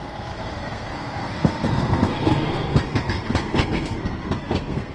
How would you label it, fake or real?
fake